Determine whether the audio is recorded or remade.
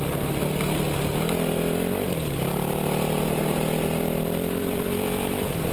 recorded